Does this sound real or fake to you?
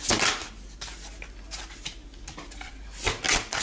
real